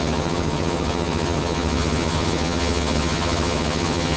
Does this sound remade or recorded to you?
remade